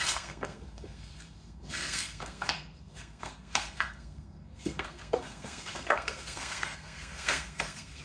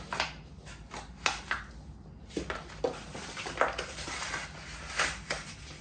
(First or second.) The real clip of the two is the second